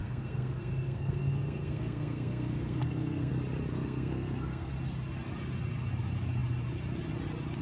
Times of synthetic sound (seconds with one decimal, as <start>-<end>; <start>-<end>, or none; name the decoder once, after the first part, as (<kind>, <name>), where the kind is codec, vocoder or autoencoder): 0.0-3.3 (codec, SNAC); 3.7-4.7